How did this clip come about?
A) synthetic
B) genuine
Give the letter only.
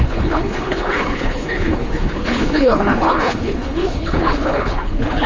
A